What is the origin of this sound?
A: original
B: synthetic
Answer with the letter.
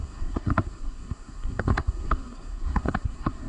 B